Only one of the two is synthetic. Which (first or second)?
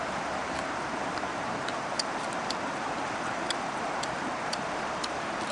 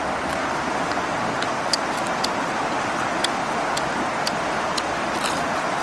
first